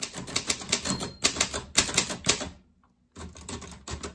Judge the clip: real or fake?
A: real